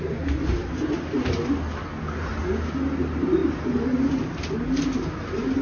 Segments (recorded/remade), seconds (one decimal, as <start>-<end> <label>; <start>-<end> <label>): 0.0-5.6 recorded

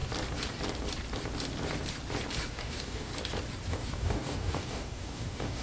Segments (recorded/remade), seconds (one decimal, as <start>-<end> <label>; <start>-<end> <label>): 0.0-2.5 recorded; 2.5-3.1 remade; 3.1-3.7 recorded; 3.7-5.6 remade

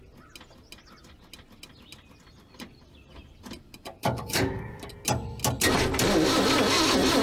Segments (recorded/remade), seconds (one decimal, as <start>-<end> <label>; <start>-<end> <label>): 0.0-4.0 recorded; 4.0-4.9 remade; 4.9-7.2 recorded

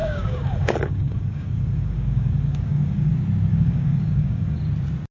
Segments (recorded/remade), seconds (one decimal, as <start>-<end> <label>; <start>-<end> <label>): 0.0-3.1 remade; 3.1-3.5 recorded; 3.5-4.6 remade; 4.6-5.1 recorded

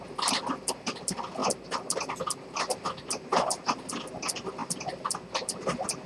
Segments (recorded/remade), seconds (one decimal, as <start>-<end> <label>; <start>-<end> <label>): 0.0-6.1 recorded

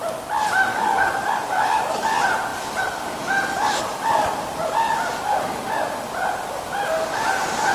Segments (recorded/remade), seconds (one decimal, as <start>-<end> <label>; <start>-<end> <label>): 0.0-0.7 recorded; 0.7-2.0 remade; 2.0-7.7 recorded